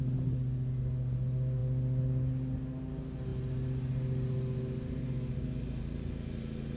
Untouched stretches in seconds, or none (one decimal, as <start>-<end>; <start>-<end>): 0.0-6.8